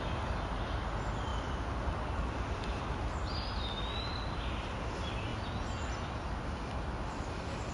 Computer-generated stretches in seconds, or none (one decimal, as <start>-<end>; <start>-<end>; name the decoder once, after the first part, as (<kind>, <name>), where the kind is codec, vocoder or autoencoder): none